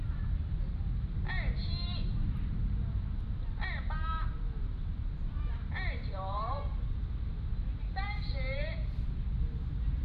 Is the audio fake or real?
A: fake